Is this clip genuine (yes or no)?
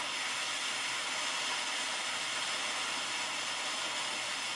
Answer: yes